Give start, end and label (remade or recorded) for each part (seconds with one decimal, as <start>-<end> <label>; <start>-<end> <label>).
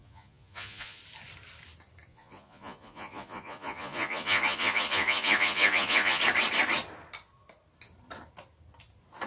0.0-1.0 remade; 1.0-2.1 recorded; 2.1-6.2 remade; 6.2-9.3 recorded